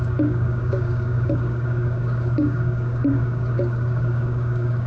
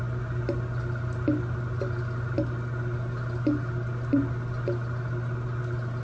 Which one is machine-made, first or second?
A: first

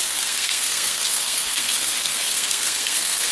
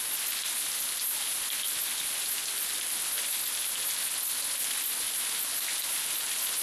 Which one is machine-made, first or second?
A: first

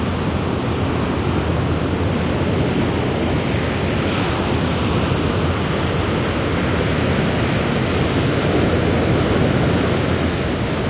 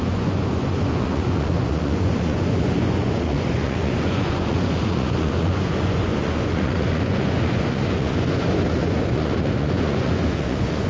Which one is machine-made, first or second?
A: second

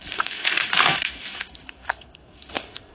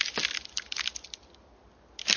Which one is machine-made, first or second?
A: first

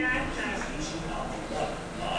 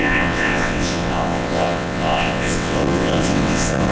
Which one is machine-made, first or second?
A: second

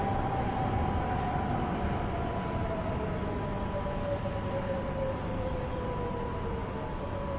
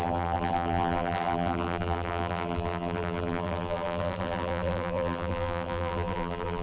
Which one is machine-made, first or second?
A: second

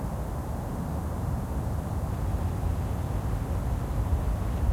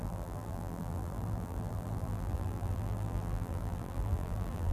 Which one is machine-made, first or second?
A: second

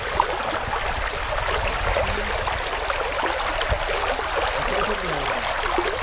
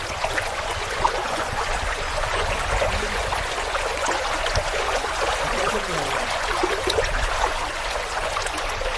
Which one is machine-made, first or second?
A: second